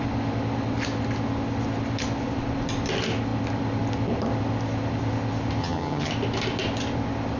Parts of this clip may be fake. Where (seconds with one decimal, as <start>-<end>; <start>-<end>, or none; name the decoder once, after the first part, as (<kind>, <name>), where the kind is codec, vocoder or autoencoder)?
5.6-6.1 (vocoder, HiFi-GAN)